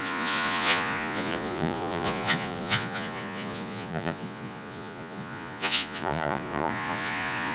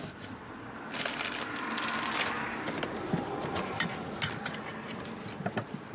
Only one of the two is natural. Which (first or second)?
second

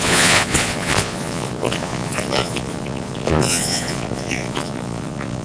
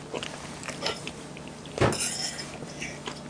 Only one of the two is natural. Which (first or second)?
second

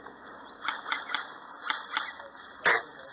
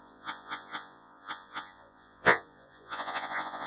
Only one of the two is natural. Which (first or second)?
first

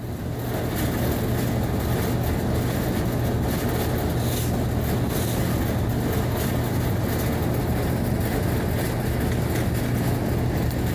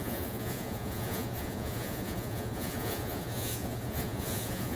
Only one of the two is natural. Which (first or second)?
first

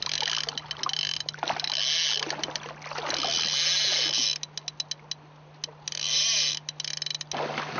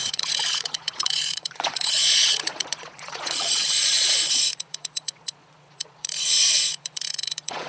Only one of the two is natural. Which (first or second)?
first